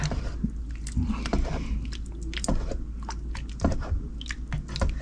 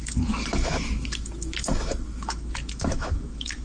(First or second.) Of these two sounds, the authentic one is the first